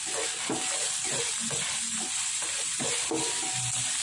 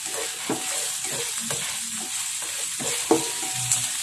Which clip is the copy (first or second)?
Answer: first